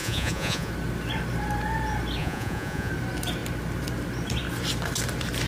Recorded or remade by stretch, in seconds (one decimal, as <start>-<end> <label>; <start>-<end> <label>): 0.0-0.7 remade; 0.7-2.2 recorded; 2.2-2.9 remade; 2.9-5.5 recorded